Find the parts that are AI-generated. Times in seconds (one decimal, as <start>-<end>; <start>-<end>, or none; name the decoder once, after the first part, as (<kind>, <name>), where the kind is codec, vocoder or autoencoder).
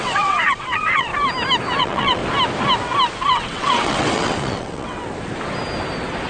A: 0.0-1.1 (vocoder, WaveNeXt); 1.8-2.2; 3.2-5.0